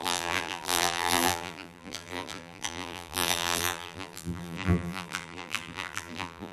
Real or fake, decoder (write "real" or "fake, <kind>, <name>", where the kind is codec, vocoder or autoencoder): fake, vocoder, BigVGAN v2